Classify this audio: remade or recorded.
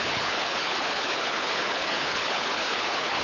remade